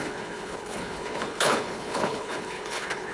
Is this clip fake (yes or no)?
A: yes